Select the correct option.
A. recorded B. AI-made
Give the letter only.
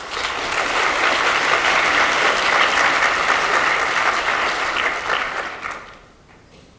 A